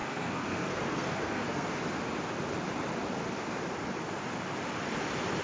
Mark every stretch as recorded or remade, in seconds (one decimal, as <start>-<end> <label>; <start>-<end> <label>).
0.0-1.7 remade; 1.7-5.4 recorded